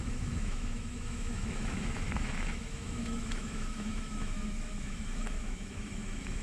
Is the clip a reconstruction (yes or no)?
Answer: yes